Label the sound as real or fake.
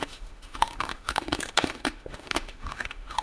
fake